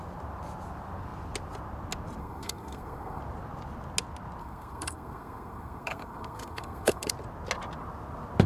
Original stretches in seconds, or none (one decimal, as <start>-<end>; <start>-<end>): 0.0-2.2; 3.2-4.4; 7.1-8.5